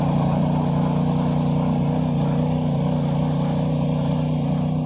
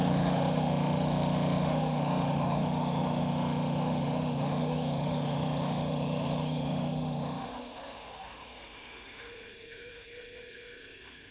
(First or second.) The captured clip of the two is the first